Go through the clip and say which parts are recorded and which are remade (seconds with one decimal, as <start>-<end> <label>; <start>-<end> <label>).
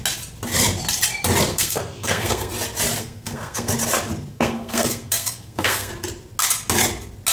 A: 0.0-1.5 recorded; 1.5-2.5 remade; 2.5-3.0 recorded; 3.0-3.7 remade; 3.7-4.3 recorded; 4.3-5.9 remade; 5.9-7.3 recorded